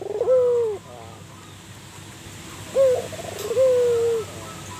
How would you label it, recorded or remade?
recorded